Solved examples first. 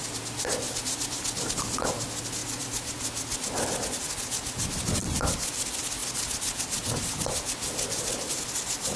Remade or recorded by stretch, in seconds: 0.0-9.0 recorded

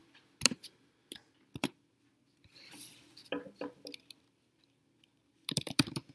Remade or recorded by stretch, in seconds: 0.0-6.1 remade

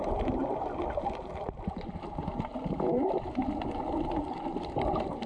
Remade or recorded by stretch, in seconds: 0.0-0.4 remade; 0.4-1.7 recorded; 1.7-2.5 remade; 2.5-3.0 recorded; 3.0-5.3 remade

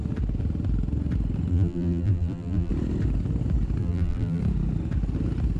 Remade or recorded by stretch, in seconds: 0.0-1.5 recorded; 1.5-2.7 remade; 2.7-3.8 recorded; 3.8-4.4 remade; 4.4-5.6 recorded